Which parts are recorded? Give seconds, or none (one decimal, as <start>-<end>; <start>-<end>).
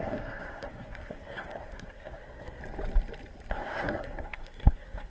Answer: 2.6-3.5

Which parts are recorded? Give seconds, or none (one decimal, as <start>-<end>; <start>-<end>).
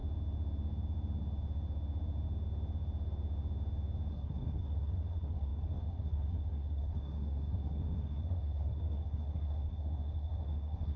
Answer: 0.0-4.1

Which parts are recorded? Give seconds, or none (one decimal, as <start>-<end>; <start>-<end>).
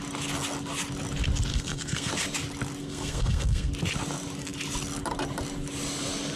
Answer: 0.0-1.5; 2.1-2.8; 3.7-6.4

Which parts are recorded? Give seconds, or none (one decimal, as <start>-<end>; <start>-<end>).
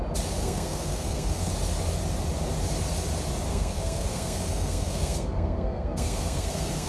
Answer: 0.0-0.4; 1.5-3.5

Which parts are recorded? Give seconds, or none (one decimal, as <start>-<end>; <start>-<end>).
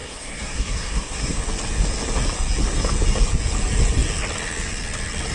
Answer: 1.4-5.3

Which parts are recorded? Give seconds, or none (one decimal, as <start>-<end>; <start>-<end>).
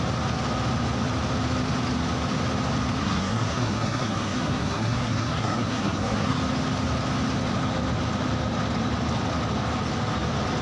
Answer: 0.0-3.0; 6.4-10.6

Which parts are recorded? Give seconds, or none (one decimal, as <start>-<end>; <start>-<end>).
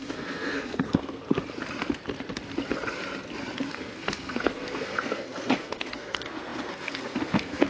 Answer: 1.2-3.7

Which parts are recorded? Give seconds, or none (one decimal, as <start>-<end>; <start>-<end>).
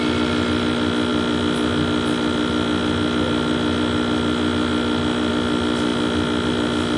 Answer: 0.0-7.0